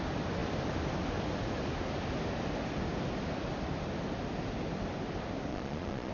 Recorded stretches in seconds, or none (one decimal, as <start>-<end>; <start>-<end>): 0.0-5.5